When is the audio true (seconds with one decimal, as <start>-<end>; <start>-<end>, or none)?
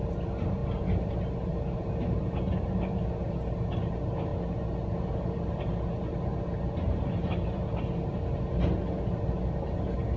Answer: 0.0-10.2